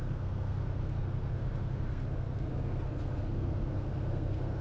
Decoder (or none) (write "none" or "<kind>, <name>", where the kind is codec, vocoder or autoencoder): codec, SNAC